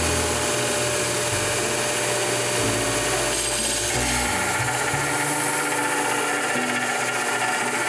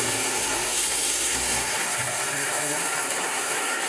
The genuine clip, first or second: first